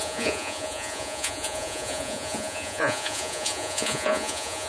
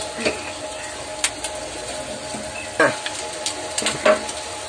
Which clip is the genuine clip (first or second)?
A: second